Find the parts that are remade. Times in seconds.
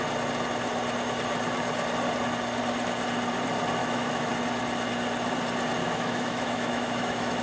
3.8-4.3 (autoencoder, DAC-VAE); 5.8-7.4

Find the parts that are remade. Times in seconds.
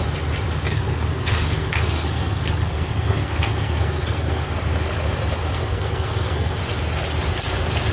0.7-4.5 (codec, SNAC); 5.4-6.6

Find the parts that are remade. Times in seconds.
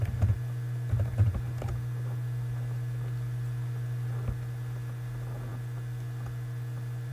none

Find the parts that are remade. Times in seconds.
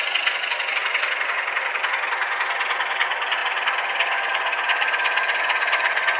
none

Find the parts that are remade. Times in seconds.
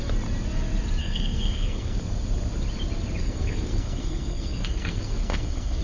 1.0-2.0 (codec, SNAC); 3.2-5.8